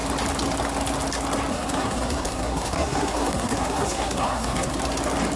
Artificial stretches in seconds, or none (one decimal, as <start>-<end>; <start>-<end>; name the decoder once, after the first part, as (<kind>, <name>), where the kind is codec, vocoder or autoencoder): 1.5-4.7 (codec, SNAC)